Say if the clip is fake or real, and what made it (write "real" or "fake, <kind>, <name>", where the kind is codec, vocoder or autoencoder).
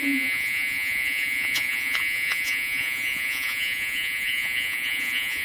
fake, vocoder, Vocos